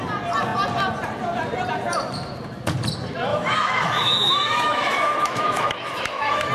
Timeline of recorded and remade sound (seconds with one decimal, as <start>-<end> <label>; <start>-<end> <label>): 0.0-3.3 recorded; 3.3-6.5 remade